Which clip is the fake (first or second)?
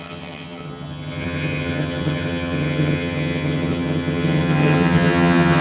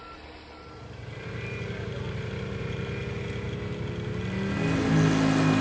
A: first